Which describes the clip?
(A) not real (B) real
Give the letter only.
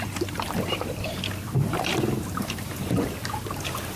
A